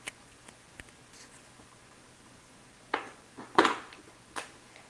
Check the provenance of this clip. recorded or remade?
remade